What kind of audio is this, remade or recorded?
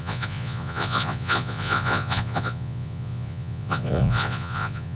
remade